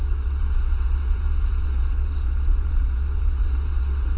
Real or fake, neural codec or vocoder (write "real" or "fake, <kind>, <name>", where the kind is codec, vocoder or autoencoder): fake, vocoder, WaveNeXt